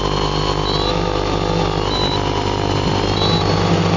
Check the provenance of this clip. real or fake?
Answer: real